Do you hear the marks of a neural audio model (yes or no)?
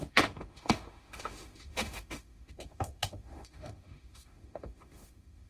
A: yes